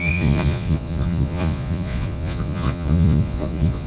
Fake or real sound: fake